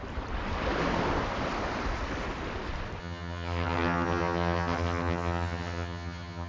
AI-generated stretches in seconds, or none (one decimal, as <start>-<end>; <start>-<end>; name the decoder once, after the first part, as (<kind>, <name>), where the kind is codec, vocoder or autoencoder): 3.0-6.5 (vocoder, HiFi-GAN)